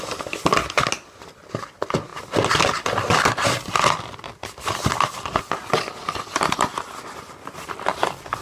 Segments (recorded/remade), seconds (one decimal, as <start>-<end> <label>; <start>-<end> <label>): 0.0-8.4 recorded